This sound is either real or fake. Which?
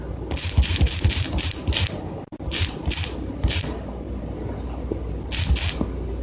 real